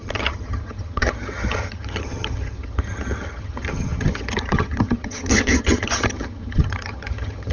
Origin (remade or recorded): remade